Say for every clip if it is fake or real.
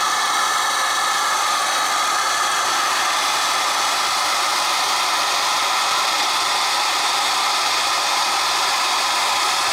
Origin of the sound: fake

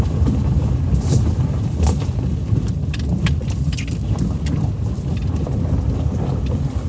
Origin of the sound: real